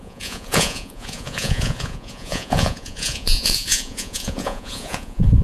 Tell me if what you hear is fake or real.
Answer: fake